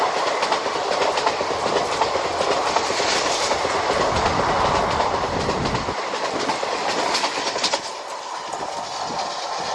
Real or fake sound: real